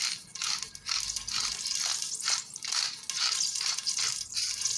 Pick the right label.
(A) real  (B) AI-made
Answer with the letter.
A